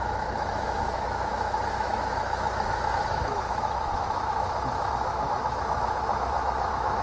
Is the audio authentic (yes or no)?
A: no